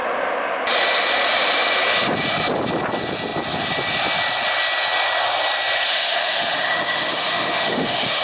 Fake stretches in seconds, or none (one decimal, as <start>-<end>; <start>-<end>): 5.9-8.2